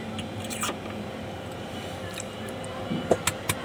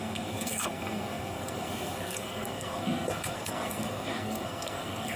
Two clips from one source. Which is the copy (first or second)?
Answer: second